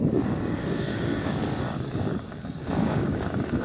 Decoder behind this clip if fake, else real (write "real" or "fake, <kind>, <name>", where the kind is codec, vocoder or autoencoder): fake, codec, DAC